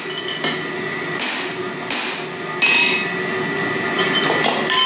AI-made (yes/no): no